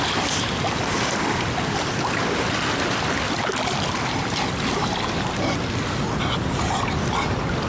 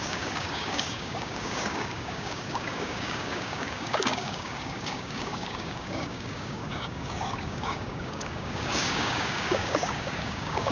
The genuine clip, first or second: first